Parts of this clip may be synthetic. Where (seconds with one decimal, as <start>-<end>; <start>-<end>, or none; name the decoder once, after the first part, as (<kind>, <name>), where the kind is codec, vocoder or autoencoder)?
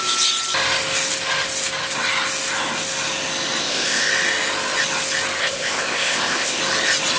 3.6-4.1 (codec, ZipCodec); 5.4-6.6